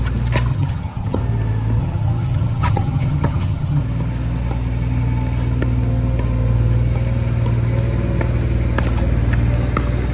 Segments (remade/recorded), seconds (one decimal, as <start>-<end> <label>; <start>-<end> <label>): 0.0-0.5 recorded; 0.5-1.2 remade; 1.2-1.8 recorded; 1.8-3.8 remade; 3.8-10.1 recorded